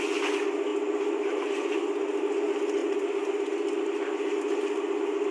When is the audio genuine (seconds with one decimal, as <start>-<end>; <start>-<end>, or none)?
0.0-5.3